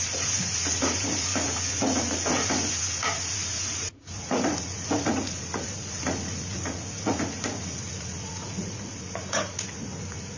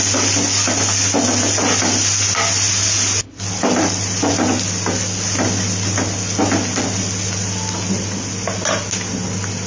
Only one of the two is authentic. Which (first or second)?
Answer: second